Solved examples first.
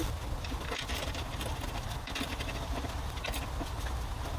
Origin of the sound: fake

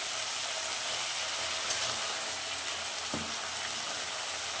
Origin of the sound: real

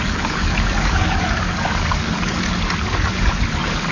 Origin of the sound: fake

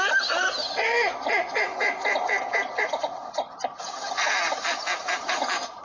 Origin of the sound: real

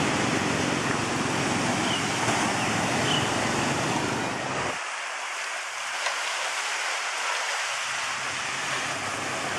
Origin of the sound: real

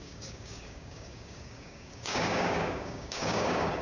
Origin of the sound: fake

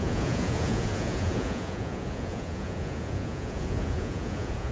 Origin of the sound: fake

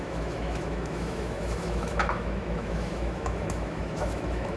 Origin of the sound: fake